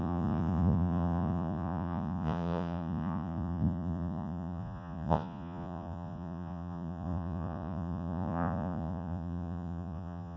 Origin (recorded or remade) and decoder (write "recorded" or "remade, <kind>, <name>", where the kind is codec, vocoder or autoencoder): remade, vocoder, Vocos